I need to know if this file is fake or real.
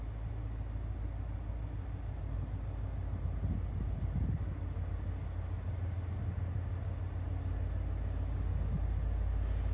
real